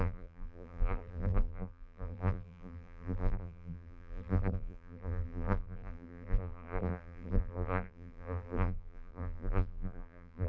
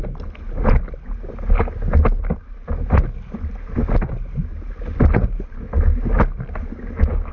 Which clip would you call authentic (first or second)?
second